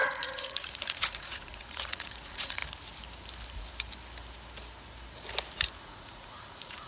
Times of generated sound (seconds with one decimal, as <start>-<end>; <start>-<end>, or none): 0.0-2.6; 5.8-6.9